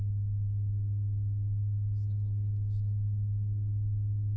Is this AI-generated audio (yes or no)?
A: no